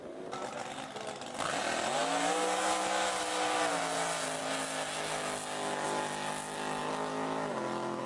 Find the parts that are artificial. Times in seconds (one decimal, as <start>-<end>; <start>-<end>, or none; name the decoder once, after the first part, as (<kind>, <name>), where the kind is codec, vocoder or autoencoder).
none